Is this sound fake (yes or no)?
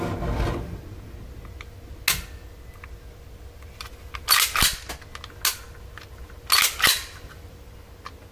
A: no